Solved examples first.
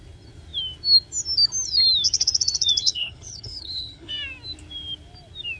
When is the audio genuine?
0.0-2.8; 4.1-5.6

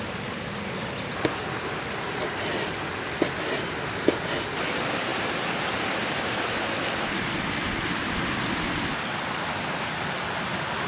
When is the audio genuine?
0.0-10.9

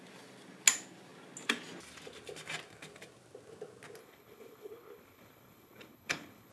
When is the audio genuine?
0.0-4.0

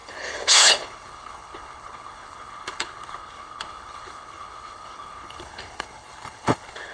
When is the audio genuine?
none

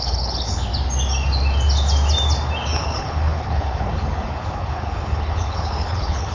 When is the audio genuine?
0.7-2.8

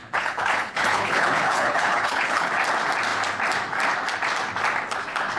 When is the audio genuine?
2.5-5.4

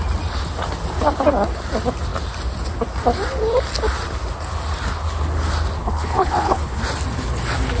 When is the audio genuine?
0.0-5.8; 6.8-7.8